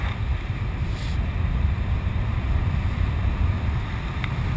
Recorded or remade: recorded